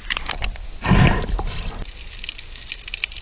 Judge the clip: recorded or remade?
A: recorded